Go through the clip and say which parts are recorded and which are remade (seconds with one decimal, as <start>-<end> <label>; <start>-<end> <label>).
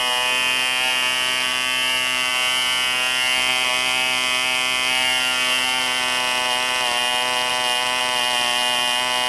0.0-9.3 recorded